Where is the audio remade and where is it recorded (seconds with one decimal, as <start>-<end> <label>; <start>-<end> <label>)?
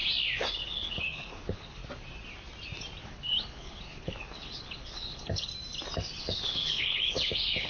0.0-0.5 recorded; 0.5-1.8 remade; 1.8-3.0 recorded; 3.0-5.5 remade; 5.5-6.2 recorded; 6.2-7.7 remade